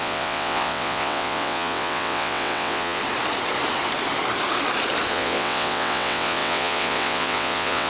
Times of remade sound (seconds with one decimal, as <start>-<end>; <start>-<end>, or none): 0.0-3.0; 5.1-7.9